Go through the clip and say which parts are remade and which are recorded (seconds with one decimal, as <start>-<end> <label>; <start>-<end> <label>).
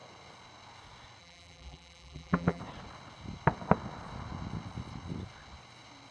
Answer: 0.0-1.2 recorded; 1.2-2.6 remade; 2.6-6.1 recorded